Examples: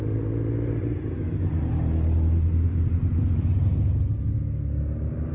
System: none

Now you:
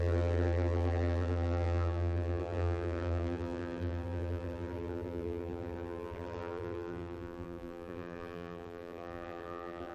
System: vocoder, BigVGAN v2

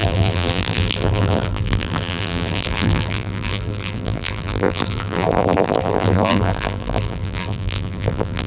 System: vocoder, BigVGAN v2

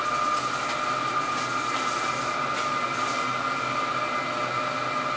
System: none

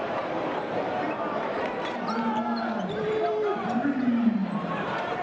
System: vocoder, BigVGAN v2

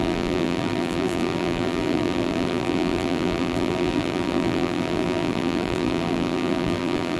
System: vocoder, BigVGAN v2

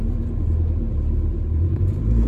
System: vocoder, BigVGAN v2